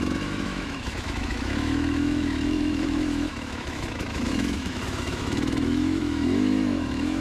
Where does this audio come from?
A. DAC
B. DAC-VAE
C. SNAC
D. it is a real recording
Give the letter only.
B